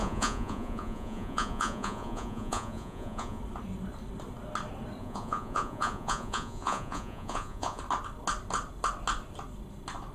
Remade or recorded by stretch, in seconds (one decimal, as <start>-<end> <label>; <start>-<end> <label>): 0.0-3.4 remade; 3.4-5.0 recorded; 5.0-7.8 remade; 7.8-10.1 recorded